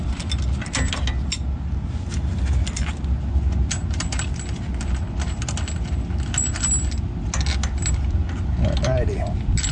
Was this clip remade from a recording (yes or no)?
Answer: no